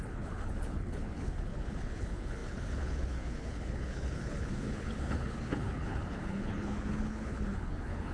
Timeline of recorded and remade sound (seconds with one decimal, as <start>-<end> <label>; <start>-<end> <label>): 0.0-8.1 remade